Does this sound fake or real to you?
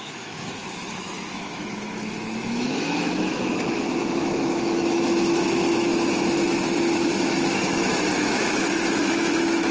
fake